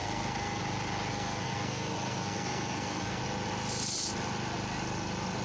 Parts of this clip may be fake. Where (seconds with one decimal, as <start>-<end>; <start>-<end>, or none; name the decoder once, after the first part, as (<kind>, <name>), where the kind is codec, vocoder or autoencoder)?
0.0-0.6 (codec, SNAC); 1.1-3.2